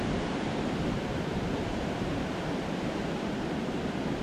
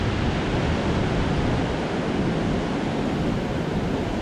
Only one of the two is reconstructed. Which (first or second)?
first